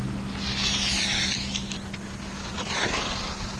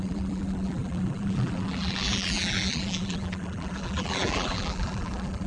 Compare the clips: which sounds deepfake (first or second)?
second